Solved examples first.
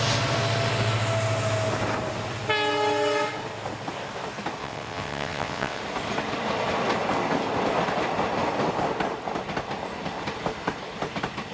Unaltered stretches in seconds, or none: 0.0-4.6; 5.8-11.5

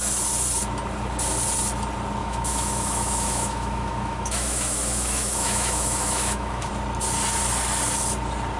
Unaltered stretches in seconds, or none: 0.0-2.2; 6.7-8.6

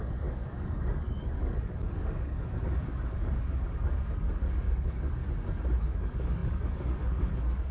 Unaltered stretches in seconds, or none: 5.2-5.8

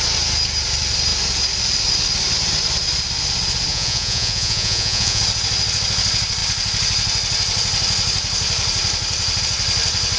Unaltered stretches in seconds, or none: 0.0-3.7; 5.2-10.2